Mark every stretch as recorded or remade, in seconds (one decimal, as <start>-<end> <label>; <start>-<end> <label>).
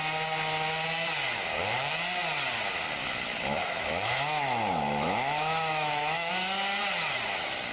0.0-3.0 recorded; 3.0-6.3 remade; 6.3-7.7 recorded